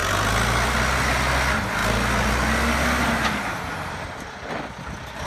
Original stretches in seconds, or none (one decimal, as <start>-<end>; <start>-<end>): 0.0-5.3